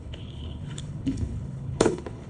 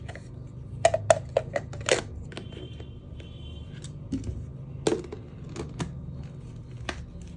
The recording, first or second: second